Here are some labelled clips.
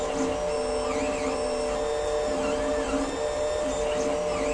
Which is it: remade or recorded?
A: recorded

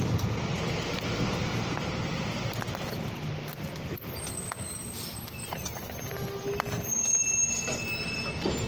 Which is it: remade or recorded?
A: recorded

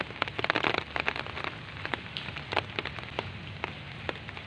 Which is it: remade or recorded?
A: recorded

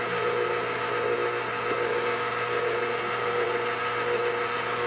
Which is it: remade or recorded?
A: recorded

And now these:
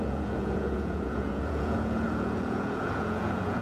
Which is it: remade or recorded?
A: remade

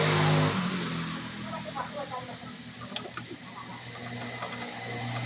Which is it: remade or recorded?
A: recorded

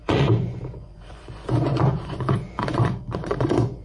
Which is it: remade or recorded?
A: remade